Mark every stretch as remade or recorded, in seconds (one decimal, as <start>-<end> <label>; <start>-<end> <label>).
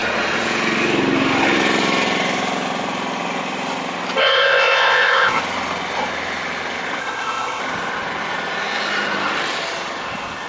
0.0-4.2 recorded; 4.2-5.4 remade; 5.4-7.0 recorded; 7.0-7.6 remade; 7.6-10.5 recorded